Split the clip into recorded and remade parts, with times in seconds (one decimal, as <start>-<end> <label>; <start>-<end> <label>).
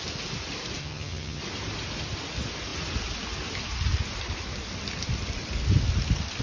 0.0-0.8 recorded; 0.8-1.4 remade; 1.4-6.4 recorded